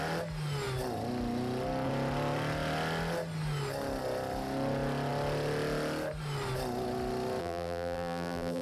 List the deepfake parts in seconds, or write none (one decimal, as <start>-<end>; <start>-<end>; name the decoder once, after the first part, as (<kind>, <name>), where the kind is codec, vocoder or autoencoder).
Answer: 7.4-8.6 (vocoder, BigVGAN v2)